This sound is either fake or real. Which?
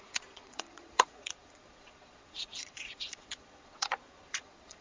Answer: fake